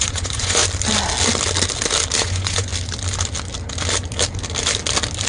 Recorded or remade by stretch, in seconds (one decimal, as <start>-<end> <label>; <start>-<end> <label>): 0.0-0.6 remade; 0.6-2.2 recorded; 2.2-2.7 remade; 2.7-5.3 recorded